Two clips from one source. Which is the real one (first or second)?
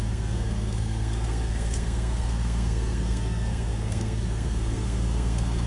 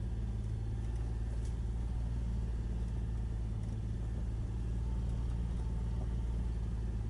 second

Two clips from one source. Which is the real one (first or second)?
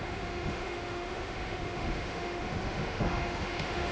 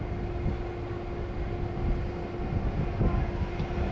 second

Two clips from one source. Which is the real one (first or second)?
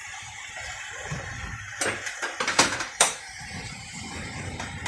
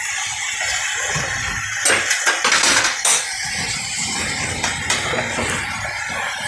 second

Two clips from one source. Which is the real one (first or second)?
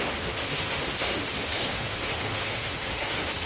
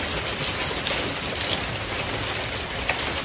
second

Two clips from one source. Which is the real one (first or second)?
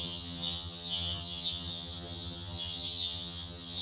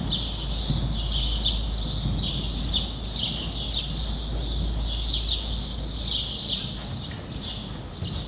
second